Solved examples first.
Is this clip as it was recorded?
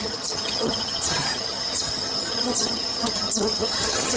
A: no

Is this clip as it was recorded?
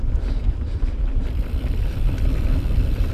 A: no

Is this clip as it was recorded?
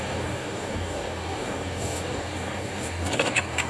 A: no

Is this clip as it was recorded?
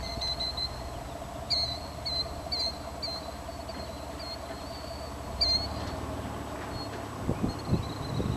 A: yes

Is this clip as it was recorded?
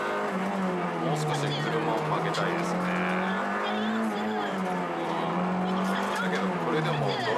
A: yes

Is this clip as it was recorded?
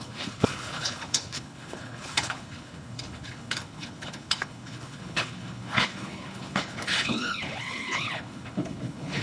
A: no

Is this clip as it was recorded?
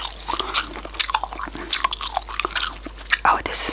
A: yes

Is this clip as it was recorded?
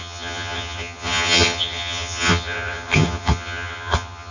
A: no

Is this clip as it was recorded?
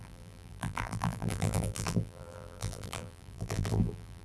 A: no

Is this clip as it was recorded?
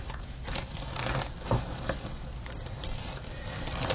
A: yes